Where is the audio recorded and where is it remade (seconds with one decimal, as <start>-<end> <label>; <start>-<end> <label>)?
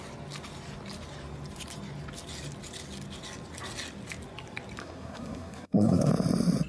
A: 0.0-4.8 recorded; 4.8-6.1 remade; 6.1-6.7 recorded